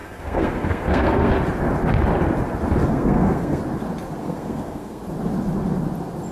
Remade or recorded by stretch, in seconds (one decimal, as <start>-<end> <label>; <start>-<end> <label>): 0.0-1.3 remade; 1.3-2.8 recorded; 2.8-3.6 remade; 3.6-4.2 recorded; 4.2-5.0 remade; 5.0-6.3 recorded